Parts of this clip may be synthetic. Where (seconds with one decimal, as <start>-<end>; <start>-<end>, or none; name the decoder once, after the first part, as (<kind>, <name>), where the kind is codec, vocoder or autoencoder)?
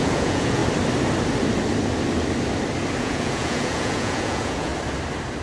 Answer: 0.0-0.6 (vocoder, Vocos); 3.0-4.7